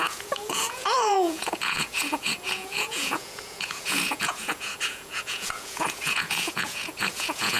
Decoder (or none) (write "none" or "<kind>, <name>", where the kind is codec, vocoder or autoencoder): vocoder, Vocos